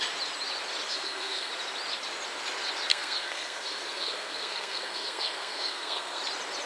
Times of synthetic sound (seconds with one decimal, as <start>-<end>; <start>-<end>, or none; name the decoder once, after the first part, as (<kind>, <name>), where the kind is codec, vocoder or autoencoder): 0.9-1.5 (codec, SNAC); 2.9-6.2